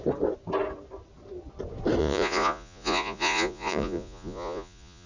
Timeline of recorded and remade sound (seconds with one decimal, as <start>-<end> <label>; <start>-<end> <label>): 0.0-2.0 recorded; 2.0-5.1 remade